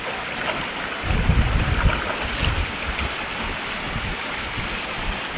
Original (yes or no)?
yes